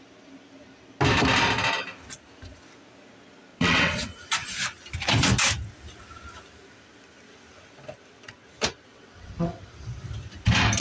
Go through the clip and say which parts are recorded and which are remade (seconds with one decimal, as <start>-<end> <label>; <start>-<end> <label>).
0.0-3.5 recorded; 3.5-4.1 remade; 4.1-8.9 recorded; 8.9-9.7 remade; 9.7-10.8 recorded

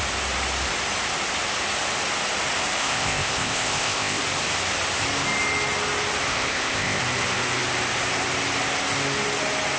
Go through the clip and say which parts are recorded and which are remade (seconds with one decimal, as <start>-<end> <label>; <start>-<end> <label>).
0.0-2.8 recorded; 2.8-4.2 remade; 4.2-6.3 recorded; 6.3-7.0 remade; 7.0-9.8 recorded

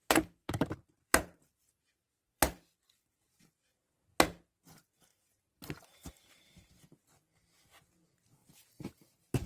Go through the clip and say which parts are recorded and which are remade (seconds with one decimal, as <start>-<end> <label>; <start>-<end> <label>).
0.0-0.4 recorded; 0.4-3.4 remade; 3.4-5.1 recorded; 5.1-6.1 remade; 6.1-8.4 recorded; 8.4-9.5 remade

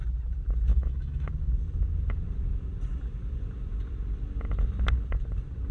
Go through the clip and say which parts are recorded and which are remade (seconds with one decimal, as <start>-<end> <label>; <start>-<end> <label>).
0.0-0.7 recorded; 0.7-1.3 remade; 1.3-5.7 recorded

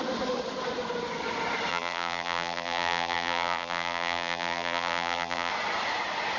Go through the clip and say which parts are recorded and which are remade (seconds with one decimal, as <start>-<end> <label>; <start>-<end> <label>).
0.0-1.7 recorded; 1.7-5.5 remade; 5.5-6.4 recorded